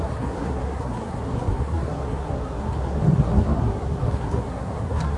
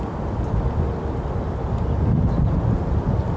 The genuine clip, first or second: second